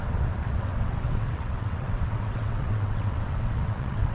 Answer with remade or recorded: remade